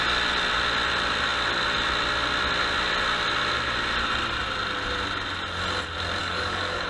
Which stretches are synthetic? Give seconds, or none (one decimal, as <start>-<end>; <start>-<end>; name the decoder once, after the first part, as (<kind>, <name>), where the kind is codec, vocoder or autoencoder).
6.2-6.9 (codec, DAC)